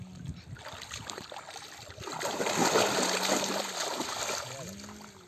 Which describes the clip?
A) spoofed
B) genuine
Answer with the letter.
B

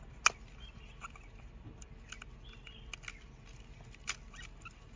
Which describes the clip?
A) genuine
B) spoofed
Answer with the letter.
A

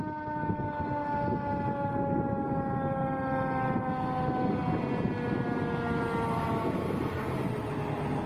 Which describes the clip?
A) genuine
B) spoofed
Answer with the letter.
A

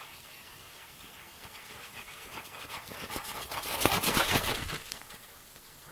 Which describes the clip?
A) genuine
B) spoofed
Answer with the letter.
B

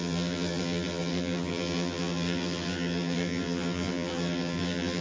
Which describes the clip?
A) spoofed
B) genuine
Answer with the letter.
A